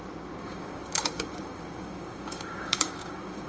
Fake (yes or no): yes